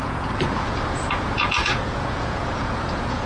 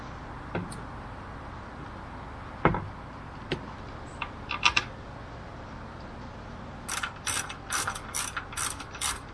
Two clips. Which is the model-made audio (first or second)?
first